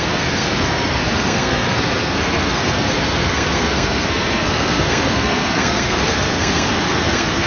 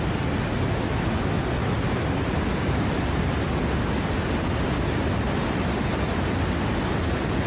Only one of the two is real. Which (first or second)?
second